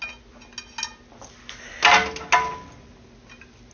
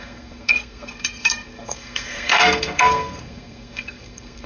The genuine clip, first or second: first